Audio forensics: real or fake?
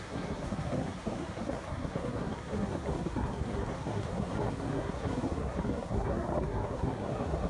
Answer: fake